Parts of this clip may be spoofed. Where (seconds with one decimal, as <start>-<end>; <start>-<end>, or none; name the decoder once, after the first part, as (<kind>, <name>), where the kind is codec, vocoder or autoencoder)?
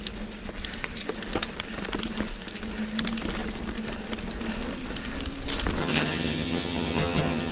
5.8-7.5 (vocoder, HiFi-GAN)